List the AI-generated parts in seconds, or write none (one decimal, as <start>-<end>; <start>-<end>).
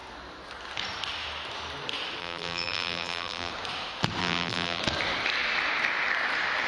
2.2-3.5; 4.2-4.8